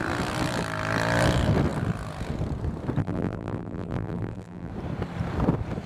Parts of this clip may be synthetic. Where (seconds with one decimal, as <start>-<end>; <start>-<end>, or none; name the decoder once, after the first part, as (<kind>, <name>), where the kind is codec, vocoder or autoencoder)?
3.0-4.7 (vocoder, BigVGAN v2)